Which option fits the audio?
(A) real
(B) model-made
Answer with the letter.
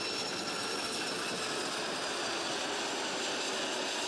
A